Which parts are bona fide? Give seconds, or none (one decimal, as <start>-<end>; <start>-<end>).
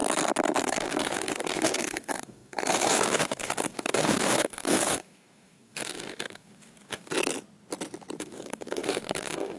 0.0-0.6; 7.1-8.2